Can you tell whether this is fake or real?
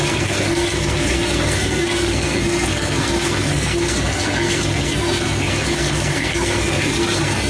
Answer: fake